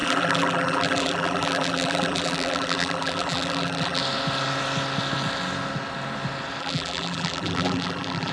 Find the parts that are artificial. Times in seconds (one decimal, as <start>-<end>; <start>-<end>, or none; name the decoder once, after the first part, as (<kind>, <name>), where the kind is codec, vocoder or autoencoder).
0.0-4.0 (vocoder, BigVGAN v2); 6.6-8.3